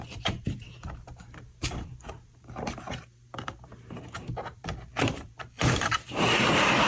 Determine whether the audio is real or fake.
fake